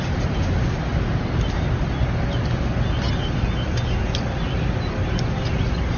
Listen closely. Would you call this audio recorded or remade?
recorded